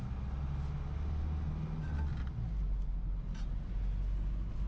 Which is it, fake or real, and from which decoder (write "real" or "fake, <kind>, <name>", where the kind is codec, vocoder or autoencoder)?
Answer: real